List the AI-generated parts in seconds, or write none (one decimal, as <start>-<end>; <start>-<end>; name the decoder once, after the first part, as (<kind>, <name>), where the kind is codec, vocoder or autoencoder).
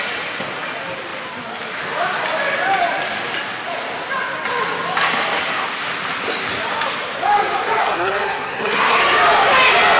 7.8-9.0 (codec, SNAC)